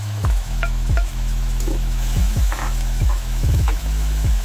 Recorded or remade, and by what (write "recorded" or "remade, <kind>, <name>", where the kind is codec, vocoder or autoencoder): remade, autoencoder, DAC-VAE